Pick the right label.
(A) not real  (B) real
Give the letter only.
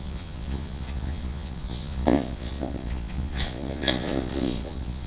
A